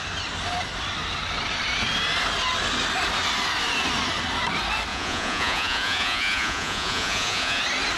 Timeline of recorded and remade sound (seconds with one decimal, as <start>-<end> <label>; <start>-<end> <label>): 0.0-4.9 recorded; 4.9-7.6 remade; 7.6-8.0 recorded